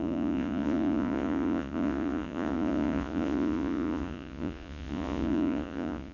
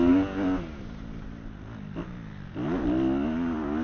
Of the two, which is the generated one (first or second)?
first